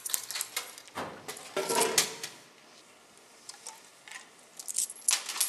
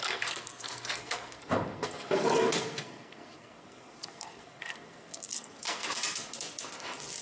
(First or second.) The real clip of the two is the first